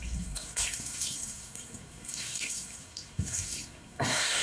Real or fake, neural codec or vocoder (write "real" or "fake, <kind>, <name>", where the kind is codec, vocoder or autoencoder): fake, codec, SNAC